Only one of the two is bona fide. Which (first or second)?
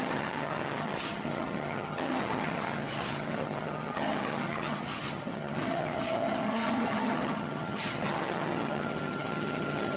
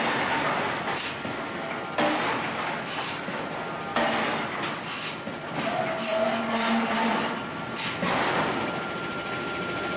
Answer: second